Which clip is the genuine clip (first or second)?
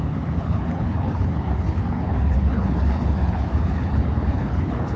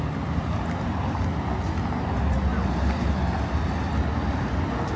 second